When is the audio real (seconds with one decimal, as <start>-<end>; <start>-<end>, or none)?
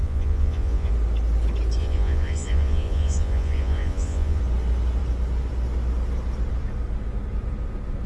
0.9-1.8; 4.4-8.1